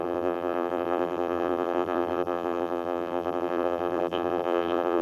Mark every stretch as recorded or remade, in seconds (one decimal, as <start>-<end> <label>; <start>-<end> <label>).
0.0-5.0 remade